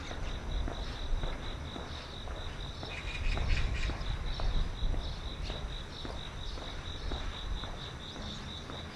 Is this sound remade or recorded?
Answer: recorded